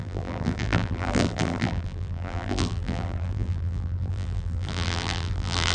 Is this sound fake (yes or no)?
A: yes